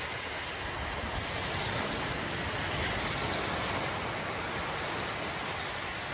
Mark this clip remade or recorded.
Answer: recorded